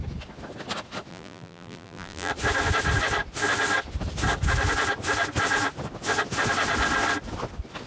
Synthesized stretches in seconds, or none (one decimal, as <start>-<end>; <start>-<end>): 1.1-2.3